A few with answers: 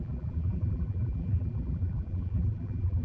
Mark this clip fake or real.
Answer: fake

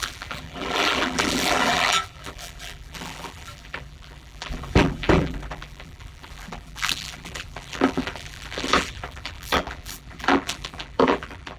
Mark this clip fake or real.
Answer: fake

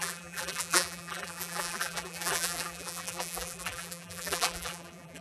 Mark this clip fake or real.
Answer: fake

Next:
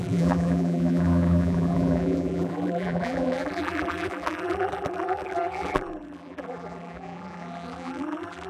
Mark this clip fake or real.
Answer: fake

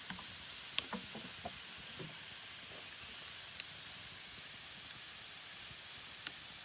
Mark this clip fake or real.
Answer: real